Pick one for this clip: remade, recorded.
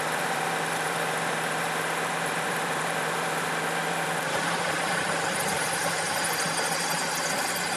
remade